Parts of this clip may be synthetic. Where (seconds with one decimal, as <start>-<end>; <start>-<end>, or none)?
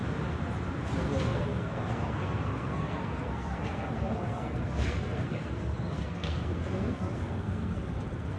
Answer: 0.9-8.4